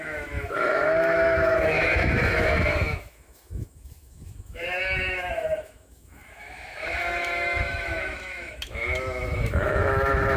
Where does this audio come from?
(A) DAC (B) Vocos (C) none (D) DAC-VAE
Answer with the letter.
D